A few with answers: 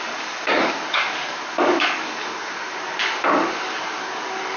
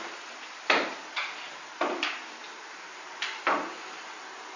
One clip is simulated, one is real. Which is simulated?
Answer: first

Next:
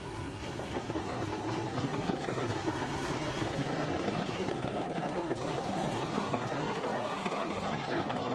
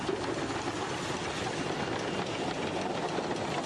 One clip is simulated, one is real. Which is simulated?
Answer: first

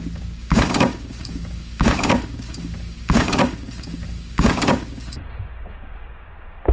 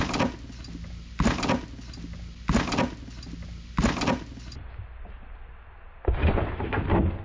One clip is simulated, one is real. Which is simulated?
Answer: first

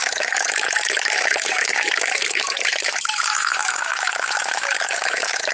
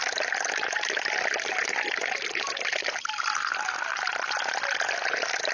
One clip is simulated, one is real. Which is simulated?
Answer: first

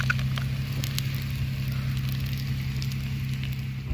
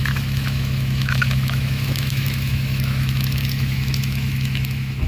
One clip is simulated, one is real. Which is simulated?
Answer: second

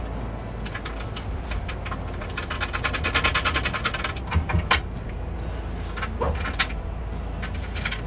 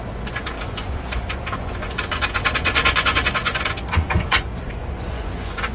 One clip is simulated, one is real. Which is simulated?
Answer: second